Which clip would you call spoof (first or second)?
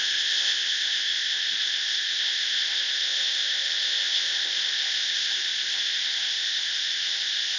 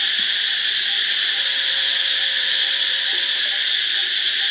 first